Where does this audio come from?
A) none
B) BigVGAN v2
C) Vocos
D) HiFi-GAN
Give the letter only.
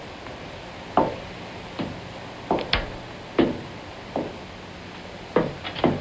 A